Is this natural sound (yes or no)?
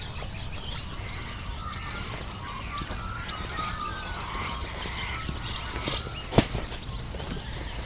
yes